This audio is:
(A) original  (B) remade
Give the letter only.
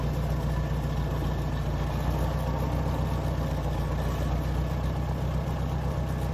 A